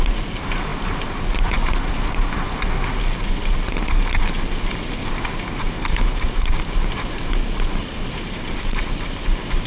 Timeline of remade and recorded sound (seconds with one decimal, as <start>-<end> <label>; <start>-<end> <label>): 0.0-9.7 recorded